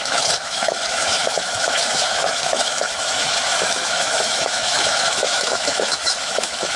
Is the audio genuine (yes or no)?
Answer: no